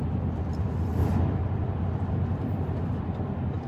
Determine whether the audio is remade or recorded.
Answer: remade